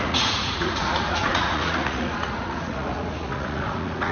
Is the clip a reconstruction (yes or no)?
yes